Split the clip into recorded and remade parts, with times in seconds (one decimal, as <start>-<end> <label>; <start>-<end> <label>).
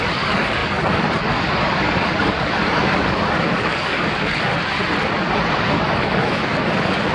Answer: 0.0-4.5 remade; 4.5-5.6 recorded; 5.6-7.1 remade